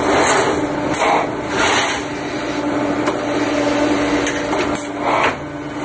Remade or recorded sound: recorded